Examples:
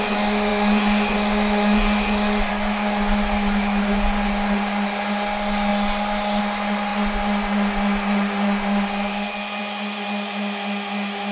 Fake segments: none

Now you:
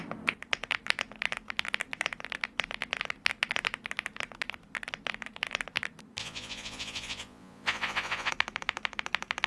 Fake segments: 6.2-8.3 (vocoder, Vocos)

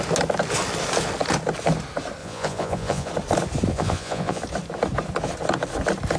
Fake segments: 2.2-3.1 (vocoder, Vocos); 3.7-4.4

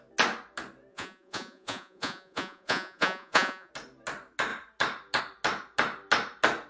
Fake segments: 0.9-3.7 (vocoder, Vocos)

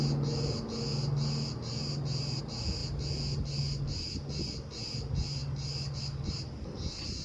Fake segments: none

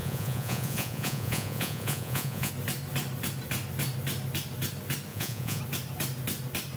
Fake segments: 0.0-2.5 (vocoder, Vocos); 5.1-5.6

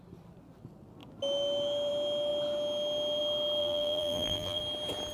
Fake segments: 3.6-4.6 (vocoder, BigVGAN v2)

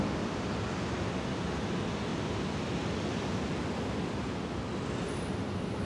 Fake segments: none